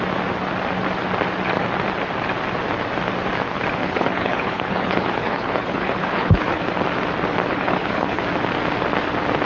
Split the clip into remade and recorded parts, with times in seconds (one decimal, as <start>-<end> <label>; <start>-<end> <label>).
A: 0.0-3.8 recorded; 3.8-6.6 remade; 6.6-7.5 recorded; 7.5-8.2 remade; 8.2-9.4 recorded